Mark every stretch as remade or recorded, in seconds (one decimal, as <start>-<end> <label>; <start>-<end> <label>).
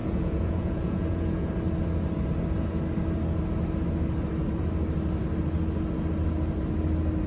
0.0-1.5 remade; 1.5-7.3 recorded